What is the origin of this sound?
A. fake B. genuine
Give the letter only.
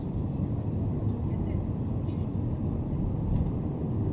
B